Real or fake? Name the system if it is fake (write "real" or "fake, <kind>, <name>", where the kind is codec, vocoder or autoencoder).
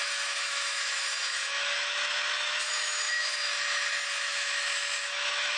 fake, autoencoder, DAC-VAE